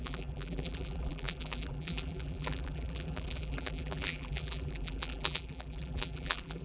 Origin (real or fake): fake